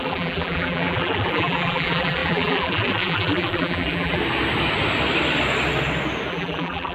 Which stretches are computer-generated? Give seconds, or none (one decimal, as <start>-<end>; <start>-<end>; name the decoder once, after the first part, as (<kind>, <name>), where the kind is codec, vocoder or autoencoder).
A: 0.0-4.2 (vocoder, BigVGAN v2); 6.3-6.9